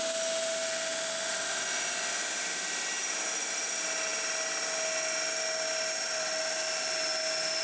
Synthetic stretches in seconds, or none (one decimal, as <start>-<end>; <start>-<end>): none